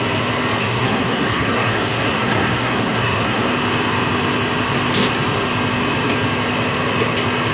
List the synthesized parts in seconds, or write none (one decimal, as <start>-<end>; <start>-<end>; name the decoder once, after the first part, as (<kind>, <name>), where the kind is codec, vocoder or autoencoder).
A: 0.6-3.5 (codec, SNAC)